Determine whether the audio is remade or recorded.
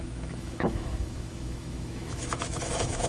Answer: remade